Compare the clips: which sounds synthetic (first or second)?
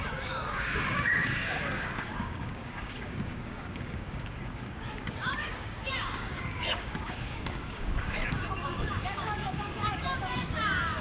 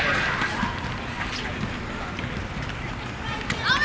first